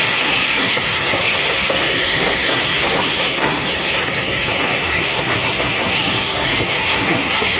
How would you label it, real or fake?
fake